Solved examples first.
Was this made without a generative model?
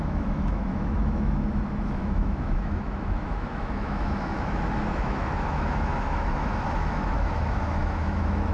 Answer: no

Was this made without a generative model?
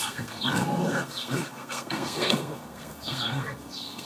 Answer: no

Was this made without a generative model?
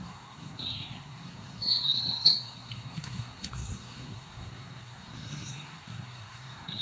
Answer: no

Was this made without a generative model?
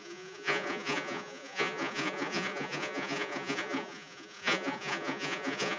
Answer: no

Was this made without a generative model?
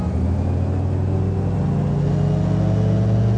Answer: yes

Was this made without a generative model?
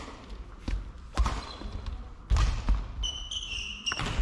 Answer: yes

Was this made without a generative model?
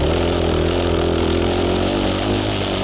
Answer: yes